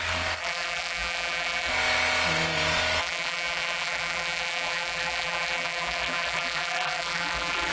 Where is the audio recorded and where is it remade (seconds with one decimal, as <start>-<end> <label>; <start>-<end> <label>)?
0.0-0.4 recorded; 0.4-1.7 remade; 1.7-3.0 recorded; 3.0-7.7 remade